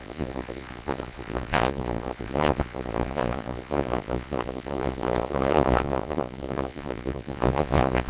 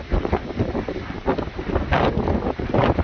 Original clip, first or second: second